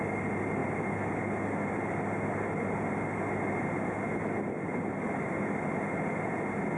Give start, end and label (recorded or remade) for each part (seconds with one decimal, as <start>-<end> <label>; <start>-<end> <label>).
0.0-6.8 recorded